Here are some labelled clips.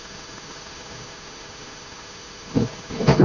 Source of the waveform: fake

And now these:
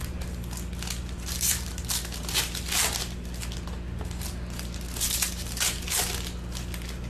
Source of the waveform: real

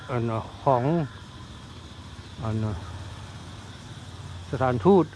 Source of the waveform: real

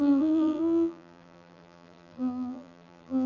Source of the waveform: fake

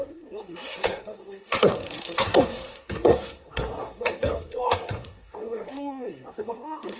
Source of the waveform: fake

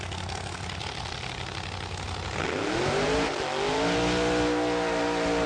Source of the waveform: real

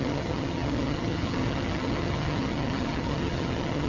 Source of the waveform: fake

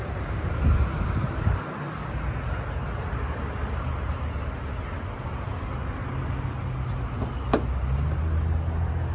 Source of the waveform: real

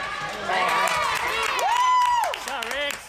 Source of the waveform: real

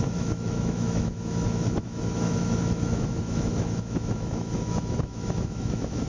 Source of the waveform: fake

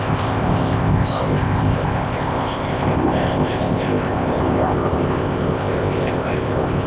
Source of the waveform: fake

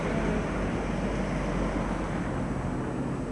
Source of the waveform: real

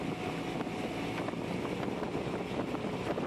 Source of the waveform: real